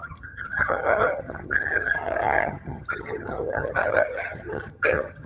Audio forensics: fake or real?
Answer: fake